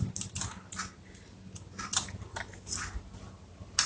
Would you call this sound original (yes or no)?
yes